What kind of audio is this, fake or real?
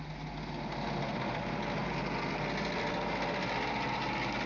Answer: real